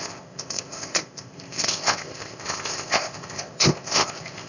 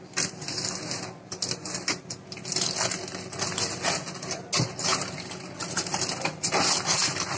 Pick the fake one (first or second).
first